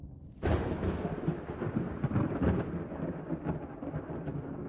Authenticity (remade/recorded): recorded